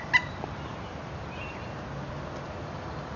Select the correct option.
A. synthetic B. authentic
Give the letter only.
B